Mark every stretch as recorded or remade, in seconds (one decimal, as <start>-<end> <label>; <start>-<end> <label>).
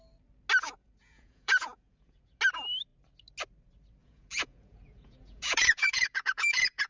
0.0-0.8 recorded; 0.8-2.4 remade; 2.4-4.0 recorded; 4.0-6.9 remade